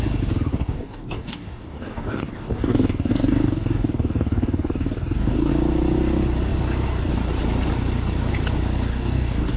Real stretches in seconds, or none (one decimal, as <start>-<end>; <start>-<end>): 0.0-0.5; 5.5-8.9